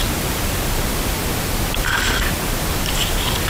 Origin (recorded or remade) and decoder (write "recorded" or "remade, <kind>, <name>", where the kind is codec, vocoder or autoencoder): remade, vocoder, BigVGAN v2